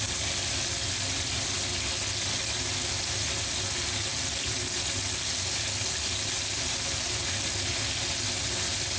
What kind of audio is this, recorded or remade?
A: recorded